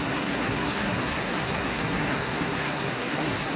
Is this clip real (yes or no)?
no